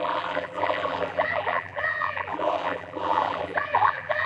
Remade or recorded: remade